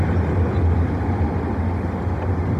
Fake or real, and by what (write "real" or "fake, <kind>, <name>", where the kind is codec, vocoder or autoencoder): real